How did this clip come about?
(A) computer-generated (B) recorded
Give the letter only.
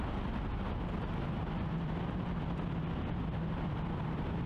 B